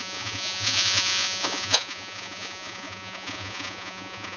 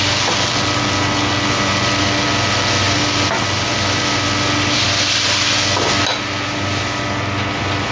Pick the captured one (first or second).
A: second